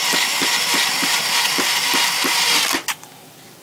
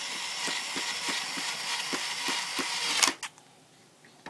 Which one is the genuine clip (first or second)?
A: second